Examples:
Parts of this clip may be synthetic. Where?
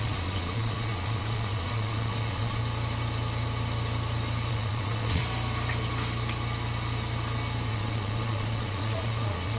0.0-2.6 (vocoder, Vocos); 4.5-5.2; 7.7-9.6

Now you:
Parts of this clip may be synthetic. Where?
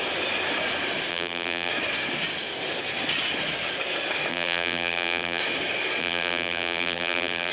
1.1-1.7 (vocoder, BigVGAN v2); 4.3-5.4; 6.0-7.5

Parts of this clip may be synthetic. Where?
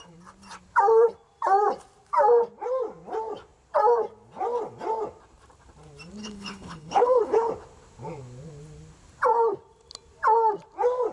6.2-7.5 (codec, HILCodec)